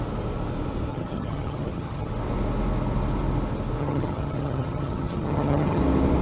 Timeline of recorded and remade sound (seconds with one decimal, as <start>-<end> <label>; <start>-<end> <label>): 0.0-0.9 recorded; 0.9-2.1 remade; 2.1-3.8 recorded; 3.8-5.8 remade; 5.8-6.2 recorded